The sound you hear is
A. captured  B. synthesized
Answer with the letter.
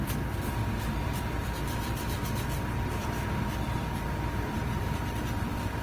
B